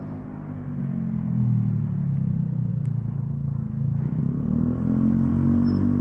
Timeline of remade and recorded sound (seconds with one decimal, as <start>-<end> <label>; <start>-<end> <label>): 0.0-2.7 recorded; 2.7-4.2 remade; 4.2-6.0 recorded